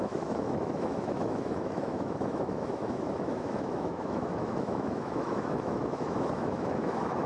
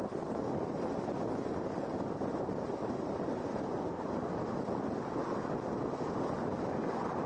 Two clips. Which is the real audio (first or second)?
second